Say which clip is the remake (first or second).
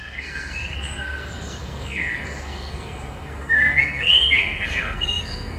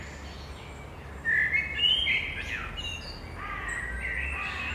first